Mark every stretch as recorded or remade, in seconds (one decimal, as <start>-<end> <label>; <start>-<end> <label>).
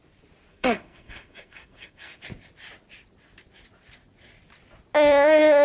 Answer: 0.0-0.5 recorded; 0.5-2.2 remade; 2.2-5.6 recorded